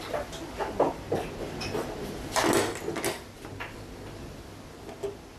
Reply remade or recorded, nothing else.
recorded